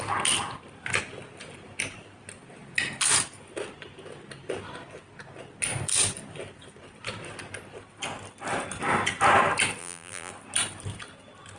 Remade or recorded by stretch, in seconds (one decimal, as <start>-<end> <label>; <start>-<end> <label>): 0.0-9.8 recorded; 9.8-10.3 remade; 10.3-11.6 recorded